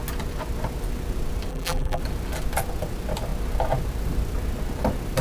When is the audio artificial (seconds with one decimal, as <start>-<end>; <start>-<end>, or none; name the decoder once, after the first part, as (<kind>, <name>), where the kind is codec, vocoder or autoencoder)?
1.5-2.0 (vocoder, BigVGAN v2)